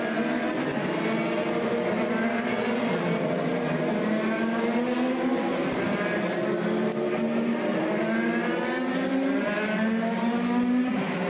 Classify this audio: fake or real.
real